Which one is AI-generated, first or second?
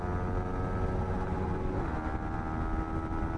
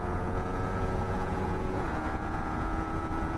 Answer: second